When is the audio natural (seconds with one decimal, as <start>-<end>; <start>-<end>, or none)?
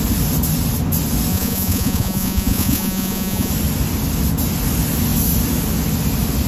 0.0-1.3; 3.5-6.5